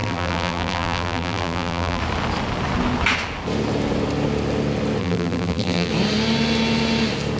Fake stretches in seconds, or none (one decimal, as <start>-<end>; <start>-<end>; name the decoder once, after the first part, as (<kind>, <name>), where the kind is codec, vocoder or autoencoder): 0.0-2.0 (vocoder, BigVGAN v2); 5.0-5.9